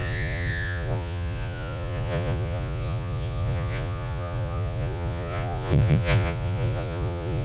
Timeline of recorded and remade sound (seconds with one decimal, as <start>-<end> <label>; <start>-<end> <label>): 0.0-7.4 remade